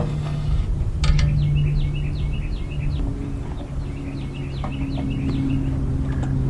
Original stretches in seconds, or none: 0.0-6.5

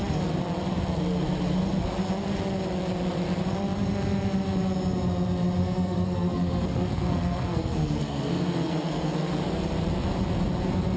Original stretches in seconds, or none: 0.0-5.6; 9.3-11.0